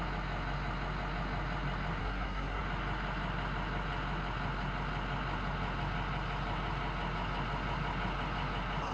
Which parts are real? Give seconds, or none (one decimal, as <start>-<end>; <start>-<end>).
0.0-2.0; 2.6-8.9